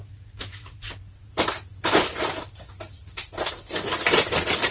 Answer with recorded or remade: recorded